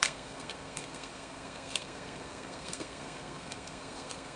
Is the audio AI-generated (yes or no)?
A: yes